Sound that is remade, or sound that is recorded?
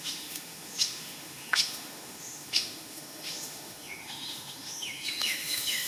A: remade